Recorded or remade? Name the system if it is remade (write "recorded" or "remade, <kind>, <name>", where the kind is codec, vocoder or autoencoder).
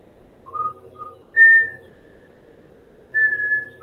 recorded